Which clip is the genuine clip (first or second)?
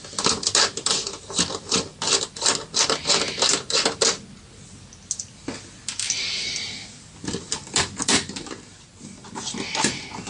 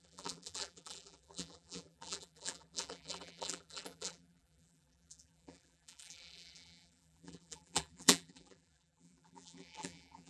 first